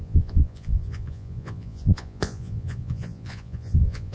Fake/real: fake